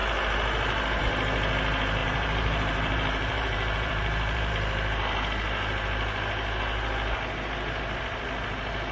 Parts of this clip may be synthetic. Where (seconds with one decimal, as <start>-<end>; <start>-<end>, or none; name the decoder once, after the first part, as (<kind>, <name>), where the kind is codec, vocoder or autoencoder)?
2.0-4.5 (vocoder, BigVGAN v2)